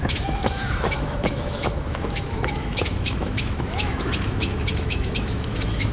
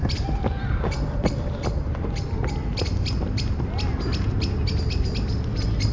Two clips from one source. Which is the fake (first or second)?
first